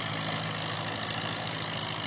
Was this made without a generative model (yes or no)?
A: yes